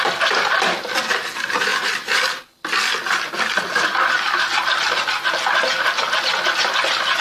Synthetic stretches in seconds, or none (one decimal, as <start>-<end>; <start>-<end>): none